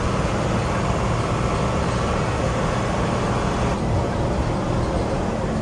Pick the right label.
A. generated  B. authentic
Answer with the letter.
B